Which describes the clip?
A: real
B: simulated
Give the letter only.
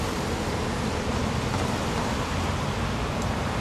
A